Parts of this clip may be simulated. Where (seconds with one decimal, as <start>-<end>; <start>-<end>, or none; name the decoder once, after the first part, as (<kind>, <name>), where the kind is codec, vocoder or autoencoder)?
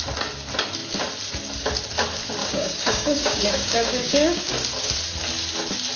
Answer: 2.4-4.5 (codec, DAC)